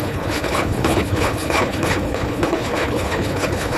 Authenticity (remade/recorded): remade